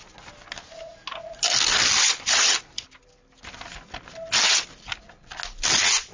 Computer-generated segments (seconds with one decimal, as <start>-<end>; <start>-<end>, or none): none